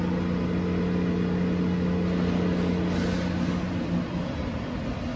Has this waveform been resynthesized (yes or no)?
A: no